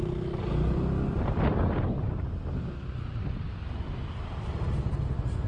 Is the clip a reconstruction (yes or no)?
no